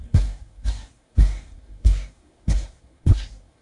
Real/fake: fake